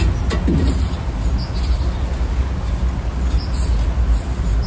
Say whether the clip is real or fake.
real